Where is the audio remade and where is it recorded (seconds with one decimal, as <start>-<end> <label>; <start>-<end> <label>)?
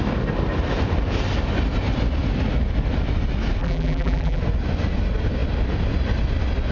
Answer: 0.0-3.6 recorded; 3.6-4.4 remade; 4.4-6.7 recorded